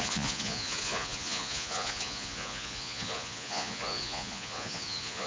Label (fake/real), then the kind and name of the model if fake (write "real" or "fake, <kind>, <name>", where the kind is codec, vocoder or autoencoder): fake, vocoder, Vocos